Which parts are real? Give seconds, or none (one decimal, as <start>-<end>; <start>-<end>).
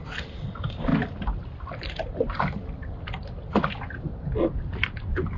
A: 0.0-5.4